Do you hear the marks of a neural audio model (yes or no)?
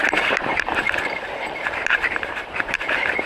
yes